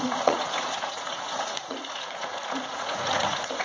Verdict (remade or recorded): remade